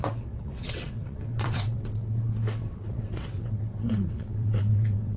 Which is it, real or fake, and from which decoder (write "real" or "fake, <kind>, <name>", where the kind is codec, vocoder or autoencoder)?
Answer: fake, vocoder, WaveNeXt